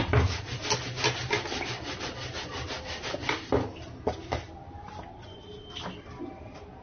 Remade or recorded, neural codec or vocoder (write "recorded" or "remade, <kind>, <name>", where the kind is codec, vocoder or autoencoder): recorded